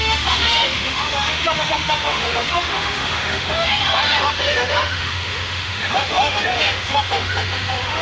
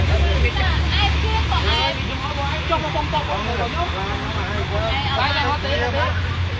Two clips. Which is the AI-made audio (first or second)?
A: first